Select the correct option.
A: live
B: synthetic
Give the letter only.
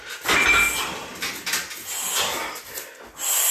A